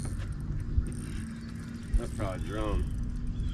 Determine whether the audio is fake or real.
real